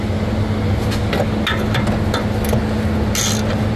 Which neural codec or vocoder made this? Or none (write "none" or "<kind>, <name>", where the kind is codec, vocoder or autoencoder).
none